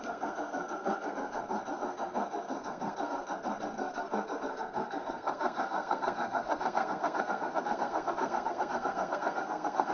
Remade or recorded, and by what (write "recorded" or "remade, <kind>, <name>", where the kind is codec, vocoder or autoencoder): remade, codec, SNAC